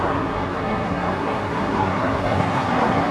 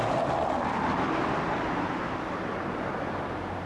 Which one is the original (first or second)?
second